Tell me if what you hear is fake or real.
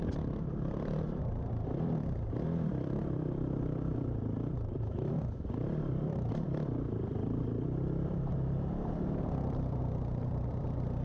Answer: fake